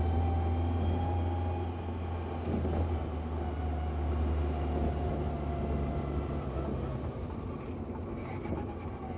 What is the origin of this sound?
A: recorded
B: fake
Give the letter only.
A